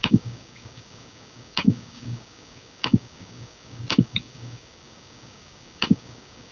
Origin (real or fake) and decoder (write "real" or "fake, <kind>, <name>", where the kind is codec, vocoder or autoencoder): fake, codec, DAC